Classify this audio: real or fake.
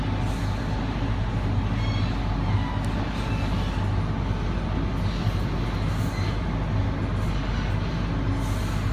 real